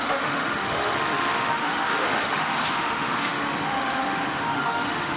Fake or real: fake